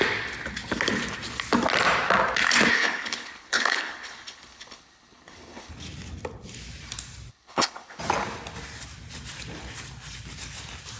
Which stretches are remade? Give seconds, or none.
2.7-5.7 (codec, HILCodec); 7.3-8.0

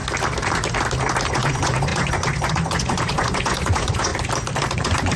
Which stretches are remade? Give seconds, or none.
1.3-4.1 (vocoder, Vocos); 4.7-5.2

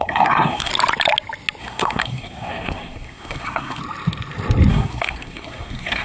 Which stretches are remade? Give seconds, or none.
0.0-0.7 (codec, SNAC); 1.6-3.8; 4.7-6.0